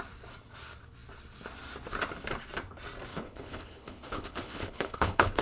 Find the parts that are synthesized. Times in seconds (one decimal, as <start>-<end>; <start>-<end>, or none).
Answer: 3.1-5.4

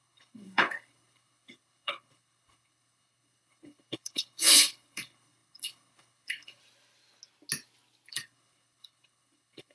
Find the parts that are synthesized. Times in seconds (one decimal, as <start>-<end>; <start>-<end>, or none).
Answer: 0.0-6.6; 8.1-9.7

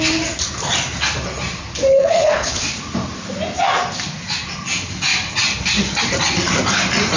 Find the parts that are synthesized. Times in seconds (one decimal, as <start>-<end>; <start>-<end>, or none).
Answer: 1.9-2.6

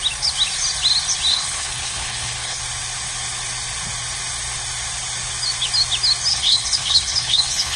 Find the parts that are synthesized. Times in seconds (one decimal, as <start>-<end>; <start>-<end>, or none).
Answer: 1.3-2.6; 6.3-7.8